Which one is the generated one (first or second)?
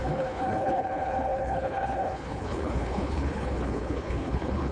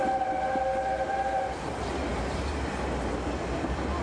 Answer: first